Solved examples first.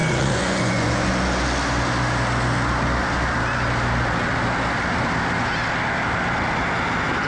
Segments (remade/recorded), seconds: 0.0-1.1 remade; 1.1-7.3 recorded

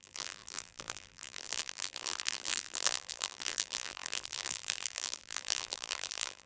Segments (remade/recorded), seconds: 0.0-6.5 remade

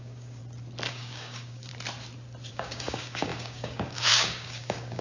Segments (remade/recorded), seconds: 0.0-0.4 remade; 0.4-0.9 recorded; 0.9-1.7 remade; 1.7-2.5 recorded; 2.5-5.0 remade

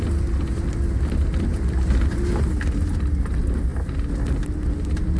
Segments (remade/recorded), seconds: 0.0-5.2 recorded

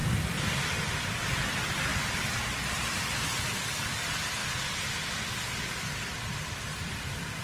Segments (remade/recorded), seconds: 0.0-7.4 recorded

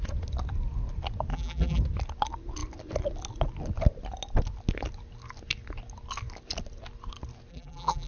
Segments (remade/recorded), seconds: 0.0-1.3 recorded; 1.3-1.8 remade; 1.8-7.5 recorded; 7.5-8.1 remade

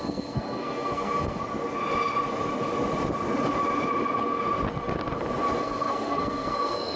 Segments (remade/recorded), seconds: 0.0-1.4 remade; 1.4-5.6 recorded; 5.6-7.0 remade